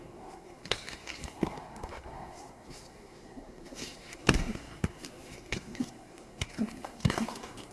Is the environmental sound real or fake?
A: fake